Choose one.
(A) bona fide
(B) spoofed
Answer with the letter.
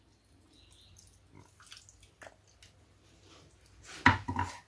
A